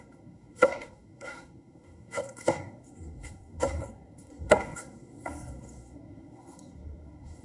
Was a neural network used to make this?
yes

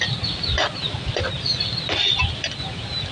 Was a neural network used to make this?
no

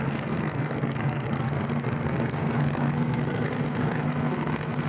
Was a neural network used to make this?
yes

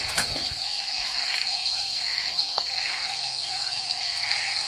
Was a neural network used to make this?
yes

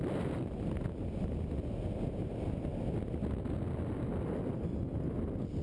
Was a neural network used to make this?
no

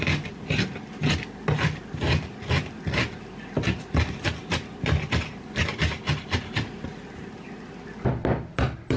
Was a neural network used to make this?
no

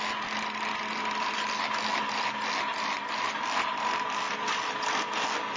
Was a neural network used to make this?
no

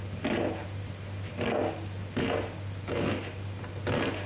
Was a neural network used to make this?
no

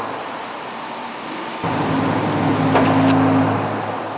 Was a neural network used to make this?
no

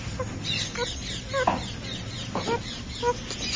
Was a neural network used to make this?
no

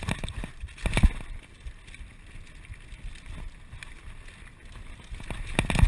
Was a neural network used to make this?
no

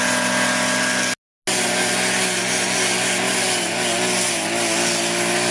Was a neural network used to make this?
no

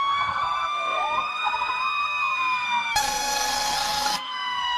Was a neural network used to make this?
yes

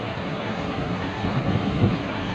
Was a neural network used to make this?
yes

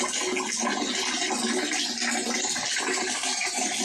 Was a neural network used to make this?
no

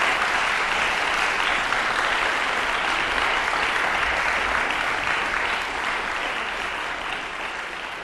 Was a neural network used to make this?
no